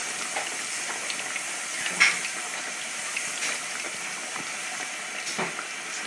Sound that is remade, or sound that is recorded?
recorded